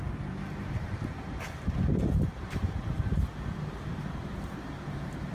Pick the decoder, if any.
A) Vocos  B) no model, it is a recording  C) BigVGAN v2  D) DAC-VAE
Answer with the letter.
C